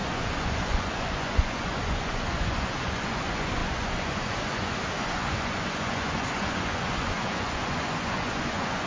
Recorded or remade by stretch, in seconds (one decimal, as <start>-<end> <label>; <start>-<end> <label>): 0.0-8.9 remade